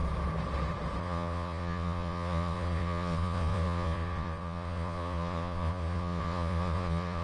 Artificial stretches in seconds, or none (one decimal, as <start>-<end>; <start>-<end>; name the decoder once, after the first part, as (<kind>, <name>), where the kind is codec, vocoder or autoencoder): 1.0-7.2 (vocoder, Vocos)